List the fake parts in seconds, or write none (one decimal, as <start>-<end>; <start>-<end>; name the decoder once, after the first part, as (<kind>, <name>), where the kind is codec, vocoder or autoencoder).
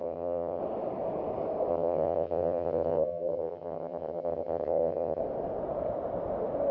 0.0-0.6 (vocoder, HiFi-GAN); 1.7-5.2